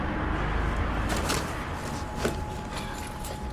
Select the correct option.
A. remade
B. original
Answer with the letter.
B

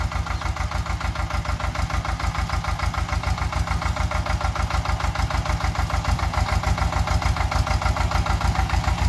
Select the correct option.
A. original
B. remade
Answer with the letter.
A